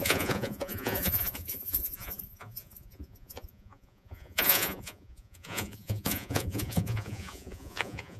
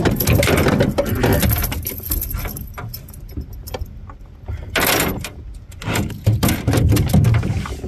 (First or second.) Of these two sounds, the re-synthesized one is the first